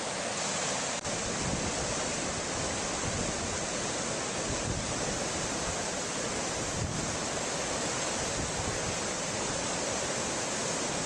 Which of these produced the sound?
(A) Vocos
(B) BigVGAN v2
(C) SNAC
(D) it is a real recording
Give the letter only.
D